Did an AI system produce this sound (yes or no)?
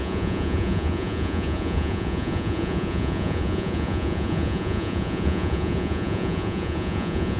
yes